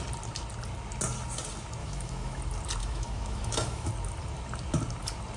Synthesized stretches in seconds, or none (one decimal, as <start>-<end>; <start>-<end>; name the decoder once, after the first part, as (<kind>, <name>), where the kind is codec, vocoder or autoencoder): 1.8-2.4 (autoencoder, DAC-VAE); 2.8-3.9